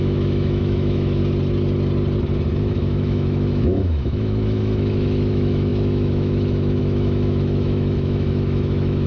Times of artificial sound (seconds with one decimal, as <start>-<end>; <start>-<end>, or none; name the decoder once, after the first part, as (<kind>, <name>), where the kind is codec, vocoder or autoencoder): 0.0-1.2 (autoencoder, DAC-VAE); 2.6-9.1